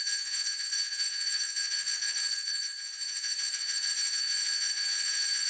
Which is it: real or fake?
fake